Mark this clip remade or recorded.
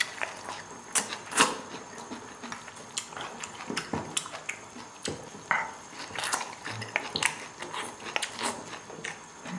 recorded